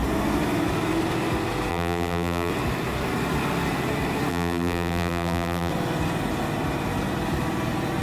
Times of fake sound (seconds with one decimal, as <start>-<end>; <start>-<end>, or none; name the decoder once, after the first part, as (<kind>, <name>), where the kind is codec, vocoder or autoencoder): 1.7-2.5 (vocoder, BigVGAN v2); 4.3-5.7